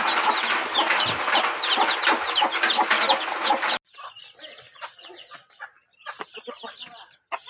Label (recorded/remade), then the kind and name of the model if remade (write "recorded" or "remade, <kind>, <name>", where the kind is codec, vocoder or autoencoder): recorded